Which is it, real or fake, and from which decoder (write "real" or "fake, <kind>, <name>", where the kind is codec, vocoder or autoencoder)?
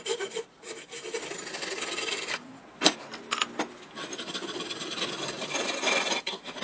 real